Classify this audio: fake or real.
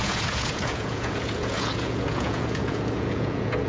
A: fake